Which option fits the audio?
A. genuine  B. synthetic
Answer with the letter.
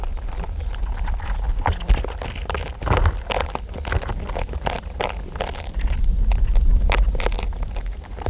A